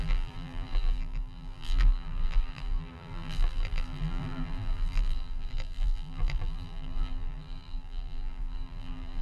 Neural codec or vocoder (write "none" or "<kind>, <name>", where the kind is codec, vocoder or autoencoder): vocoder, BigVGAN v2